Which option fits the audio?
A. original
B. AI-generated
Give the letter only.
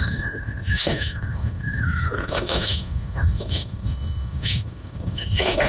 B